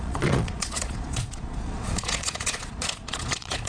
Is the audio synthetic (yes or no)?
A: yes